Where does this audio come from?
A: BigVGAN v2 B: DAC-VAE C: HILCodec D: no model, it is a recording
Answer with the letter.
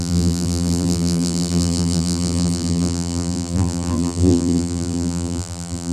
A